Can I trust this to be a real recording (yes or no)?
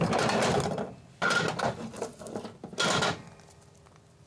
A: yes